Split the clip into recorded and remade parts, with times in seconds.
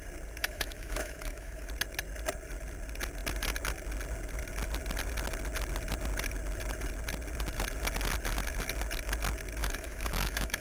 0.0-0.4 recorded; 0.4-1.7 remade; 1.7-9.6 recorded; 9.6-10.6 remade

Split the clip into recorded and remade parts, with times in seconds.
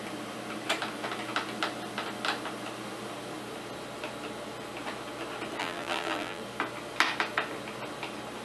0.0-5.6 recorded; 5.6-6.4 remade; 6.4-8.4 recorded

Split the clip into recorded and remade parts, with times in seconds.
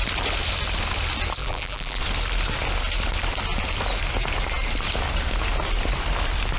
0.0-1.4 recorded; 1.4-2.0 remade; 2.0-6.6 recorded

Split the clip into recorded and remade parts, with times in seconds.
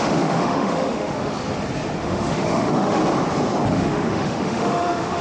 0.0-1.3 remade; 1.3-2.0 recorded; 2.0-3.0 remade; 3.0-3.7 recorded; 3.7-5.2 remade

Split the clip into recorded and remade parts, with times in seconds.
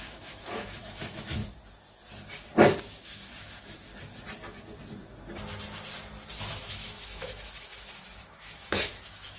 0.0-1.4 remade; 1.4-3.0 recorded; 3.0-3.9 remade; 3.9-6.4 recorded; 6.4-9.4 remade